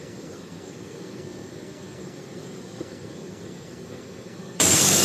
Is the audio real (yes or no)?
no